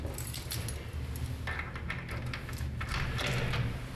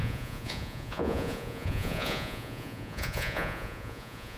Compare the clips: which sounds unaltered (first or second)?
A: first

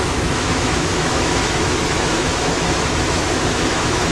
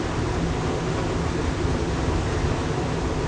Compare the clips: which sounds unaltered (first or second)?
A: second